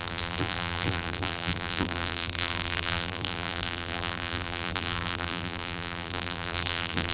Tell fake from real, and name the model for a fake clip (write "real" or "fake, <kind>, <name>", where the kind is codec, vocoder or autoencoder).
fake, vocoder, BigVGAN v2